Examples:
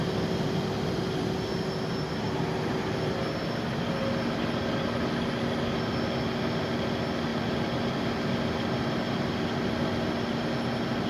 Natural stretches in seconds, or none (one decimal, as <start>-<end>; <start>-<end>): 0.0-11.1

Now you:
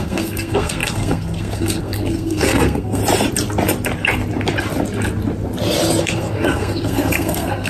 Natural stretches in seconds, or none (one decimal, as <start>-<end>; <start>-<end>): 3.0-6.0

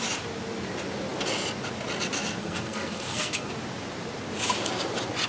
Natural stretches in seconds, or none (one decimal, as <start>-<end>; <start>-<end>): 0.0-2.4; 3.5-5.3

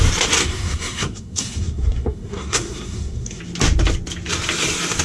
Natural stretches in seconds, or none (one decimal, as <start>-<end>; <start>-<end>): 0.0-0.4; 3.4-5.0

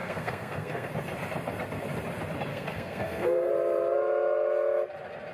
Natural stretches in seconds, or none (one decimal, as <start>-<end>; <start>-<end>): 0.9-2.5; 3.5-5.3

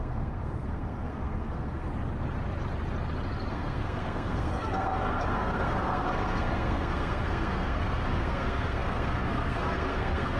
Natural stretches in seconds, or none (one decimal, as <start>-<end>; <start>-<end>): 1.9-3.5

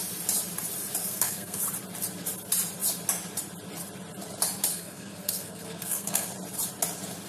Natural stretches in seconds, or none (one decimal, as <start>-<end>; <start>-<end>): 0.0-1.0; 1.6-4.7; 6.3-7.3

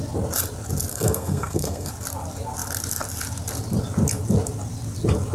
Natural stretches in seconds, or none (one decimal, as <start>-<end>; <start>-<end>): 0.0-0.9; 1.9-5.3